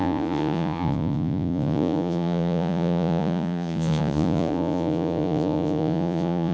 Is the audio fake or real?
fake